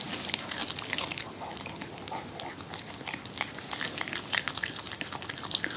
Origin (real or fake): real